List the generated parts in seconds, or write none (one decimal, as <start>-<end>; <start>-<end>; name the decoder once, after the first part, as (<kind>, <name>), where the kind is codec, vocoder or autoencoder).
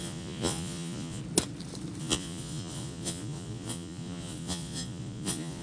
0.0-1.2 (vocoder, Vocos); 2.0-5.6